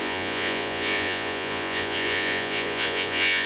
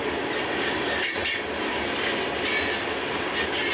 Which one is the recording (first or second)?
second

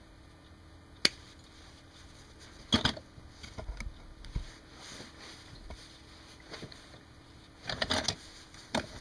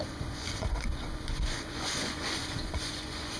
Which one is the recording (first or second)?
first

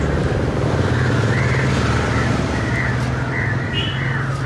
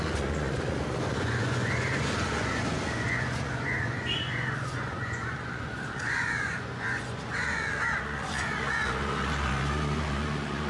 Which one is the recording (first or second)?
first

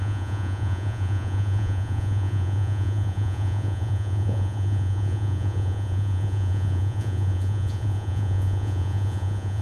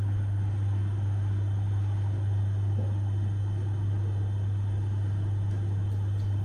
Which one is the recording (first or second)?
second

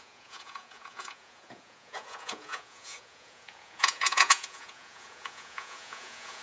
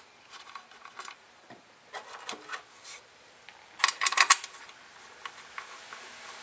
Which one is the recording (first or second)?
second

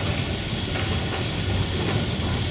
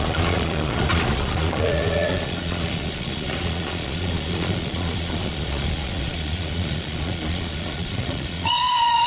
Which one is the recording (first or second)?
first